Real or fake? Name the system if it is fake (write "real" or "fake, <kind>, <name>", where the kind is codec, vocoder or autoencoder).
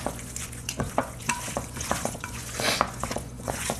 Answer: fake, vocoder, Vocos